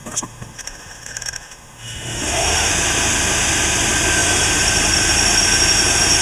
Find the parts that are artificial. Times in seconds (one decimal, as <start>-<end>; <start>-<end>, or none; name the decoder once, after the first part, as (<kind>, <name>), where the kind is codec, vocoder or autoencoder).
0.0-2.7 (autoencoder, DAC-VAE)